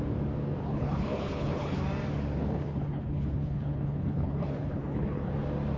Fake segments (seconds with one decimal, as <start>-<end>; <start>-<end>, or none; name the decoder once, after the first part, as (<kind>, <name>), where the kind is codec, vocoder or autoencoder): 0.6-1.8 (codec, HILCodec); 2.4-5.3